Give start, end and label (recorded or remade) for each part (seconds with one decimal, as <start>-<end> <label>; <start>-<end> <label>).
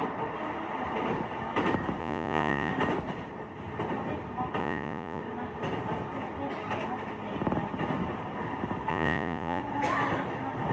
0.0-2.0 recorded; 2.0-2.7 remade; 2.7-4.6 recorded; 4.6-5.2 remade; 5.2-8.9 recorded; 8.9-9.6 remade; 9.6-10.7 recorded